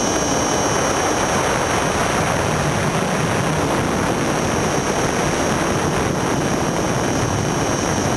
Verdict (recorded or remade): recorded